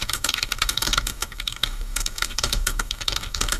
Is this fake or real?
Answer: fake